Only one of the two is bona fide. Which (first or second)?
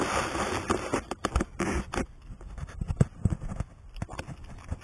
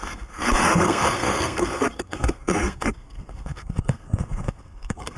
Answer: first